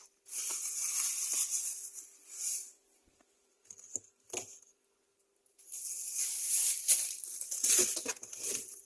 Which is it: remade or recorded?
recorded